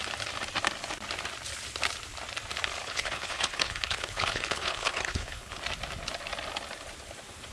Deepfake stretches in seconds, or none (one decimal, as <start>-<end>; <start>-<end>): 2.8-5.6